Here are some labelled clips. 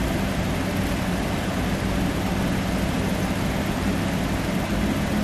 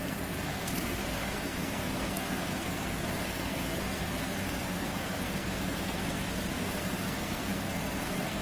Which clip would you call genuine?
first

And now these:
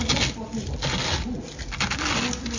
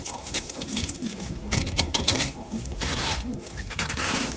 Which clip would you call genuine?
first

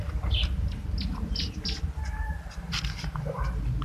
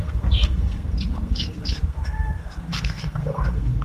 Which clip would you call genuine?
first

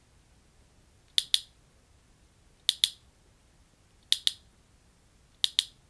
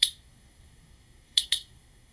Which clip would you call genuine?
first